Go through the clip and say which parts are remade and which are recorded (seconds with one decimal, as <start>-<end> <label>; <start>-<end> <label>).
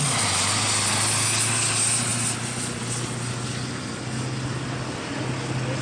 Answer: 0.0-5.8 recorded